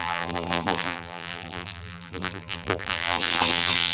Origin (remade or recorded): remade